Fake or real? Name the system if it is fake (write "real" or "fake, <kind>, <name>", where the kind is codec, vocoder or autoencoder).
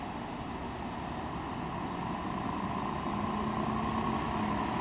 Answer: real